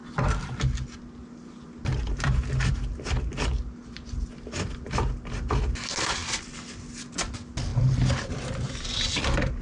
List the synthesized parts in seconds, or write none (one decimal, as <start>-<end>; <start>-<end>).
0.0-0.5; 1.9-2.7; 7.7-9.2